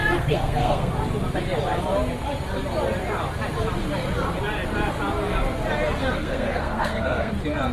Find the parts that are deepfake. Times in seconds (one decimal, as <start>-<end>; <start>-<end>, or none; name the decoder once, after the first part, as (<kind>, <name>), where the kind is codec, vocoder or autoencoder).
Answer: 0.0-0.9 (codec, SNAC); 6.0-7.3